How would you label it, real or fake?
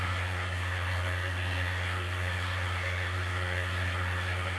fake